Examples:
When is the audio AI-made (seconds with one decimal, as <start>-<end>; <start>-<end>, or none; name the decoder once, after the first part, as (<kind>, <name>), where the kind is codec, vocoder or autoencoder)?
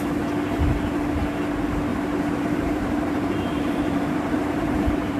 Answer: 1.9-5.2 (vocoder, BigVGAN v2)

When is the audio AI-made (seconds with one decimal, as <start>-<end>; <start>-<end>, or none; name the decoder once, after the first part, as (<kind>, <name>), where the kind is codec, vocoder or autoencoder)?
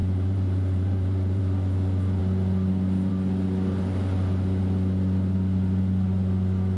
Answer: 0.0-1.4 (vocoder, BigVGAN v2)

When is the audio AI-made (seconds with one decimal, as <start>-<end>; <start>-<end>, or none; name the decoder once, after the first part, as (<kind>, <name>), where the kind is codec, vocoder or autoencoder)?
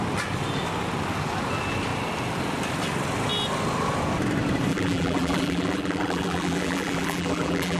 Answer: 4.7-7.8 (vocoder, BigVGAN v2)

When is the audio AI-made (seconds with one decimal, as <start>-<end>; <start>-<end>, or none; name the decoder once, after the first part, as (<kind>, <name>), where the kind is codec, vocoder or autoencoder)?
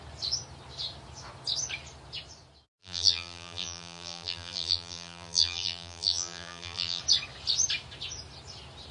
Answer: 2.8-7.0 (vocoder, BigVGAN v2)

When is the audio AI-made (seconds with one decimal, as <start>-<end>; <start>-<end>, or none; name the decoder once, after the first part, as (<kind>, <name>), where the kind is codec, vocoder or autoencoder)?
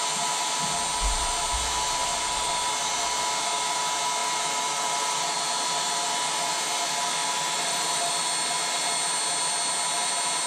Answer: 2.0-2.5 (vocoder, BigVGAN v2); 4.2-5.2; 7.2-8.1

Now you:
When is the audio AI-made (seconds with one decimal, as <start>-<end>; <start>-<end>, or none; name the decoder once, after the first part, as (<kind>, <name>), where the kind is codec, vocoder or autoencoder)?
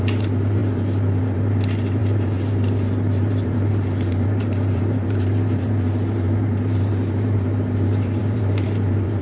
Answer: 0.0-9.2 (vocoder, BigVGAN v2)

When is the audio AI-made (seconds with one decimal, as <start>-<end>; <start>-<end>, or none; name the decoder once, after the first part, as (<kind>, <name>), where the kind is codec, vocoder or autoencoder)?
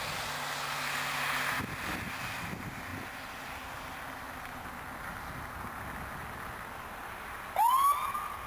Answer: none